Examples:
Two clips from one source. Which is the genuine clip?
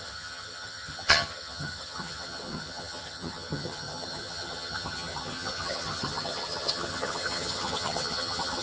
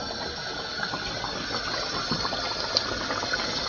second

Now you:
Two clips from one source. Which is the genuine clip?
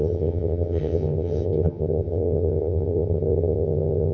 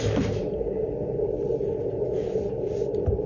second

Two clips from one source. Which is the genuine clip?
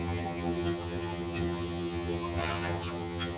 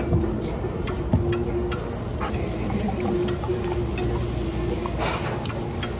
second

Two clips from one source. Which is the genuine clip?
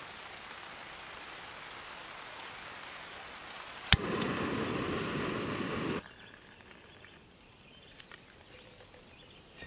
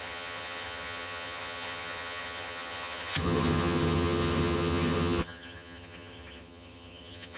first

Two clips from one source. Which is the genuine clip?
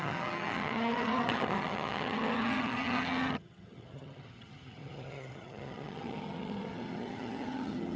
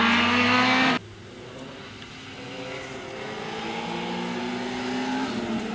second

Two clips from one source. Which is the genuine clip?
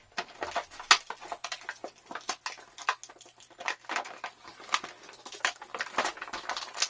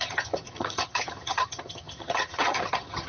first